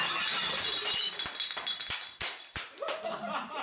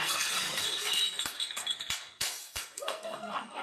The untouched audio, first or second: first